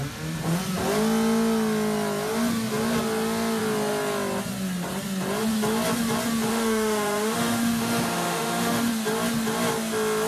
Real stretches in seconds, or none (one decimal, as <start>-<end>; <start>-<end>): 0.0-6.5; 8.9-10.3